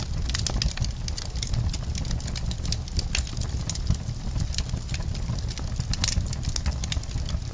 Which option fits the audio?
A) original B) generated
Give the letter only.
A